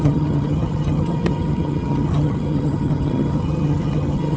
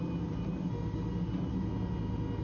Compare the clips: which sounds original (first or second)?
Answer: second